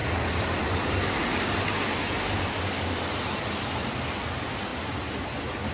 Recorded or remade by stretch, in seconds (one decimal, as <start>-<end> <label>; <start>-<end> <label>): 0.0-5.7 recorded

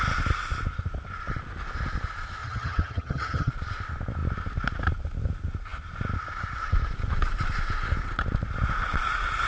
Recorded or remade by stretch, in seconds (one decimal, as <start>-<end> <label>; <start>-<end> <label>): 0.0-2.4 recorded; 2.4-3.5 remade; 3.5-9.5 recorded

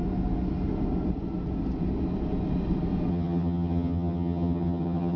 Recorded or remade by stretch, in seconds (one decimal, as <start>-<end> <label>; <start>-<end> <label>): 0.0-3.1 recorded; 3.1-5.2 remade